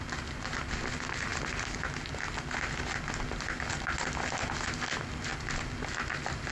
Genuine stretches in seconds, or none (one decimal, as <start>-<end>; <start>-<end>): 0.0-6.5